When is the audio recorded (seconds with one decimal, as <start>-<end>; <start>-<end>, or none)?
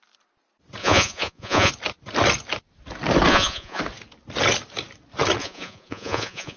0.0-0.8; 1.7-3.3; 3.8-5.4